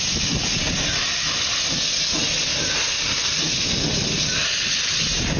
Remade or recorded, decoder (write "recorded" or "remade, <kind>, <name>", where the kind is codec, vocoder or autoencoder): recorded